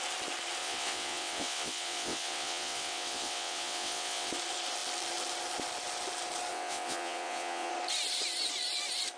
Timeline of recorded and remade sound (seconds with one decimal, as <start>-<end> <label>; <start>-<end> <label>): 0.0-0.6 recorded; 0.6-4.3 remade; 4.3-6.5 recorded; 6.5-7.7 remade; 7.7-9.2 recorded